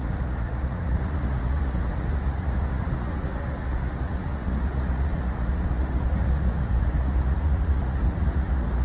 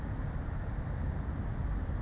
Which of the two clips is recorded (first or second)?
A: second